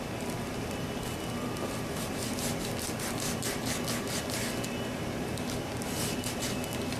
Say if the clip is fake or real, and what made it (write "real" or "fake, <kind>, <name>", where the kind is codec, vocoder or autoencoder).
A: real